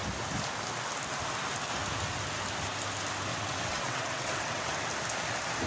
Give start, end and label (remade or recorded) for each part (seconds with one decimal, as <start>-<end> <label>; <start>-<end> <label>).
0.0-3.3 recorded; 3.3-4.7 remade; 4.7-5.7 recorded